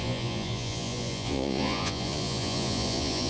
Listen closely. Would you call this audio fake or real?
fake